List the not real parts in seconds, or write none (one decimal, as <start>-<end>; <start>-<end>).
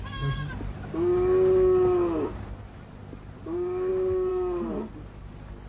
4.3-4.9